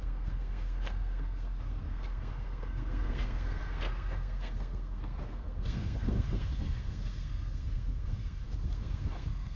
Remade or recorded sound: remade